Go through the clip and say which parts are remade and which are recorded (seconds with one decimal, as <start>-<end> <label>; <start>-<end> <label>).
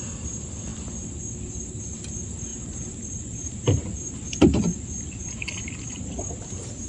0.0-6.9 recorded